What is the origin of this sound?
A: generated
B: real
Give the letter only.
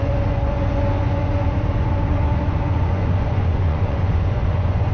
A